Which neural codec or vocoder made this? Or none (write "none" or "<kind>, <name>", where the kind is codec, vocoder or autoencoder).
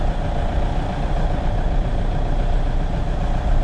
none